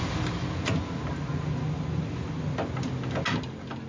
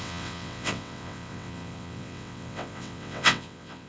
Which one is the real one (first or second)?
first